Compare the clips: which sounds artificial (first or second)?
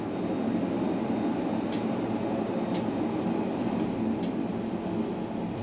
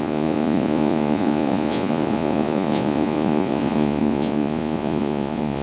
second